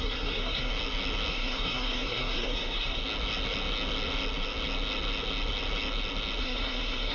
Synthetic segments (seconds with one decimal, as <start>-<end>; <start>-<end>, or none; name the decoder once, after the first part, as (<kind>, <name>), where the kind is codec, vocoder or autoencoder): 0.0-0.7 (codec, SNAC); 1.3-3.0; 6.4-7.1